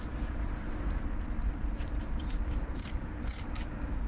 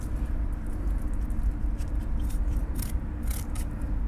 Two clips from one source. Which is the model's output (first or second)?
first